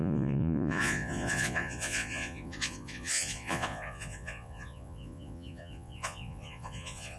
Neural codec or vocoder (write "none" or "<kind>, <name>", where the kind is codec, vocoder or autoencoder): vocoder, Vocos